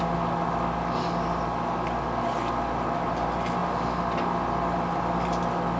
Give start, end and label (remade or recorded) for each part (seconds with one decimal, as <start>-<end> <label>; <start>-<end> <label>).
0.0-5.8 recorded